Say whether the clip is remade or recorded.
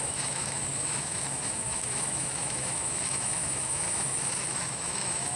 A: remade